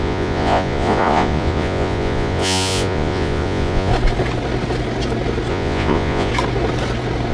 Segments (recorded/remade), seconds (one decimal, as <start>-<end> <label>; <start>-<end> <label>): 0.0-3.9 remade; 3.9-5.5 recorded; 5.5-6.3 remade; 6.3-7.3 recorded